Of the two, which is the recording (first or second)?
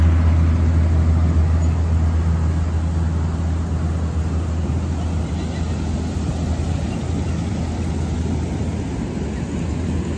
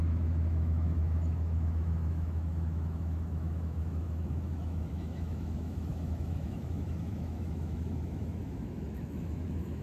first